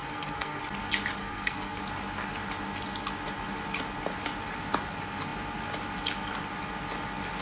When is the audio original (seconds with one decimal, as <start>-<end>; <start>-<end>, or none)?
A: 0.6-1.2; 1.8-7.4